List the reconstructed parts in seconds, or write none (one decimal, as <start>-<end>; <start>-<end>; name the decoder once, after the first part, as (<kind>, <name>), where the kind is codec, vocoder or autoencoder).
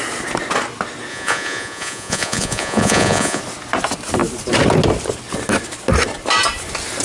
1.1-3.4 (vocoder, Vocos)